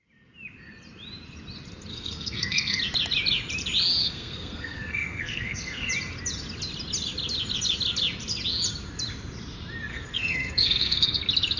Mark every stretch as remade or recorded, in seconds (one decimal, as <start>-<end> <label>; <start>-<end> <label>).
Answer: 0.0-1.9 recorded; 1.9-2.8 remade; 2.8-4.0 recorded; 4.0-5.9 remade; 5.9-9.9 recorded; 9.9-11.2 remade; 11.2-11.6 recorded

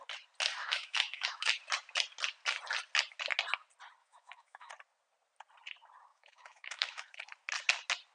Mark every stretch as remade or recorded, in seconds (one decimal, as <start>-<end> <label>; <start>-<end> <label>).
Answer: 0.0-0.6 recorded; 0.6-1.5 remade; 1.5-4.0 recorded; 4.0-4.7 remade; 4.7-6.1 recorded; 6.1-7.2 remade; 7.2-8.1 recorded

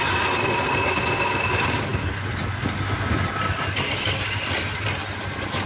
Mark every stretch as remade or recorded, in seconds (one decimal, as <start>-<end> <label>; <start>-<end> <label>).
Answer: 0.0-5.7 recorded